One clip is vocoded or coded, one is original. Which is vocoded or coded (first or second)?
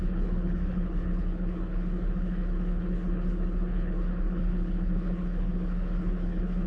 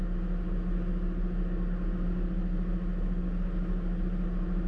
first